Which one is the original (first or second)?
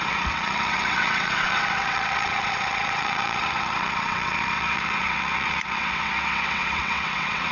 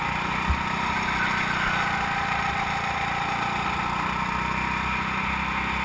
second